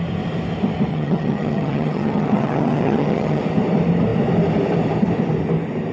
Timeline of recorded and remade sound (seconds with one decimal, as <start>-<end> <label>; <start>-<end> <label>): 0.0-0.9 recorded; 0.9-3.4 remade; 3.4-5.9 recorded